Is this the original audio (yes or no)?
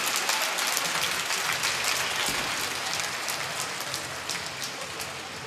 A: yes